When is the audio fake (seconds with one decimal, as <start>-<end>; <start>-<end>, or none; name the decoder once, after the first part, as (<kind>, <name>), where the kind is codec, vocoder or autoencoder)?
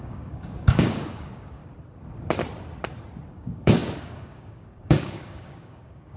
0.0-1.6 (codec, DAC); 3.3-6.2